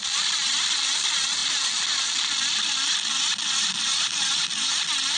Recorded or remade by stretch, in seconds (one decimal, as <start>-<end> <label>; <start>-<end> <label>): 0.0-5.2 recorded

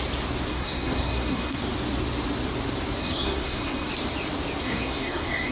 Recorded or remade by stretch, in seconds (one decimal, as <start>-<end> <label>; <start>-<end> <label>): 0.0-0.5 recorded; 0.5-1.6 remade; 1.6-3.0 recorded; 3.0-3.9 remade; 3.9-4.6 recorded; 4.6-5.5 remade

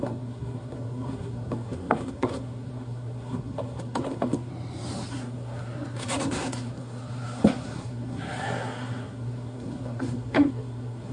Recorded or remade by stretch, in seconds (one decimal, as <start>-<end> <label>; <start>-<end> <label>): 0.0-4.5 remade; 4.5-5.1 recorded; 5.1-11.1 remade

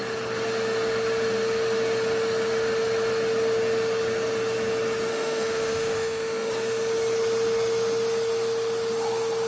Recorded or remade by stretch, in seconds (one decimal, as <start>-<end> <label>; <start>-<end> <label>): 0.0-5.1 recorded; 5.1-6.5 remade; 6.5-9.5 recorded